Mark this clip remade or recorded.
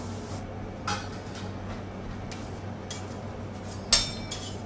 recorded